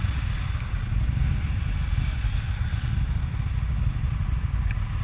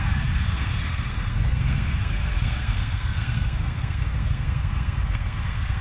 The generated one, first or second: second